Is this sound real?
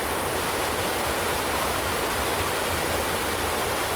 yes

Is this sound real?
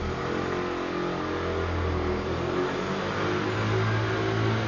yes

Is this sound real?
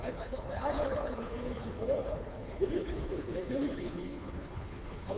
no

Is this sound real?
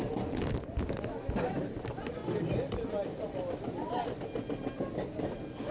yes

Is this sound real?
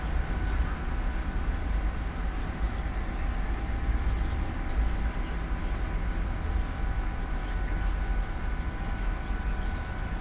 yes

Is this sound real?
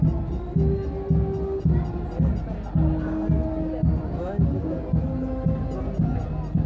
yes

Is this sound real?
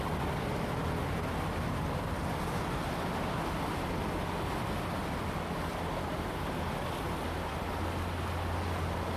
yes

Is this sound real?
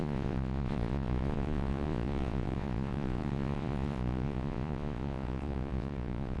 no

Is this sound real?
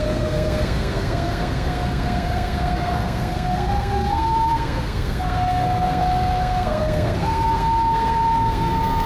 no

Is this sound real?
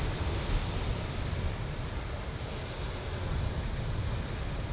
yes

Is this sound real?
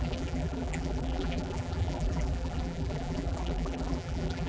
no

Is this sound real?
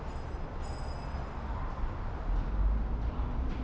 yes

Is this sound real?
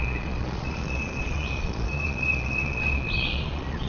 no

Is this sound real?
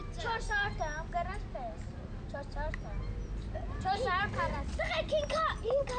yes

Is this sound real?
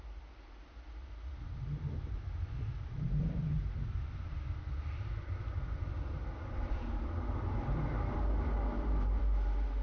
yes